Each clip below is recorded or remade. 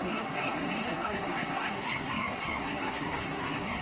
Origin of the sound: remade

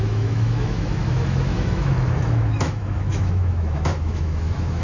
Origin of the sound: remade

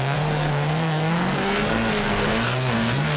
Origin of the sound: remade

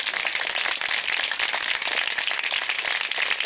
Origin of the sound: recorded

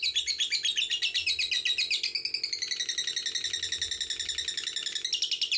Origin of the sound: recorded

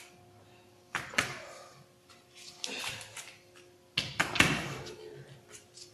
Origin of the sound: recorded